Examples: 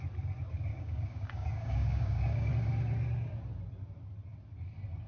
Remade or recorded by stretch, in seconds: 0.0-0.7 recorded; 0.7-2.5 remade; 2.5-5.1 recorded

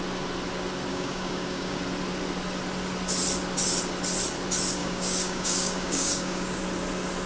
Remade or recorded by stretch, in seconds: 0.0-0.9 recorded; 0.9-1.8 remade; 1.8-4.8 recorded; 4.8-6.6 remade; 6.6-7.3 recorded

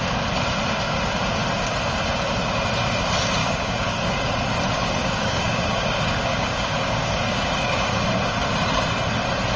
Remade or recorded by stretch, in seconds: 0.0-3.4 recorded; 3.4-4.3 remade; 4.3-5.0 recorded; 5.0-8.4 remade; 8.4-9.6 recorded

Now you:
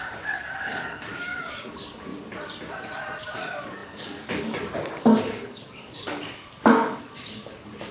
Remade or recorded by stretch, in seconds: 0.0-2.1 remade; 2.1-3.2 recorded; 3.2-7.9 remade

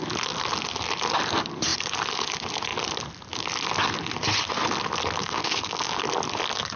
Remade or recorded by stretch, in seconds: 0.0-5.2 recorded; 5.2-6.0 remade; 6.0-6.8 recorded

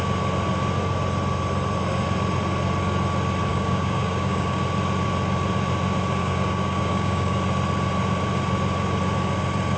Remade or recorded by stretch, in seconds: 0.0-3.5 recorded; 3.5-4.6 remade; 4.6-6.2 recorded; 6.2-7.4 remade; 7.4-9.8 recorded

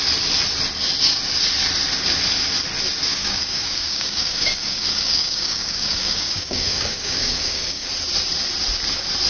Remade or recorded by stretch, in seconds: 0.0-3.1 recorded; 3.1-7.9 remade; 7.9-9.3 recorded

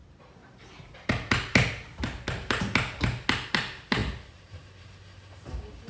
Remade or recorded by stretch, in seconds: 0.0-5.9 recorded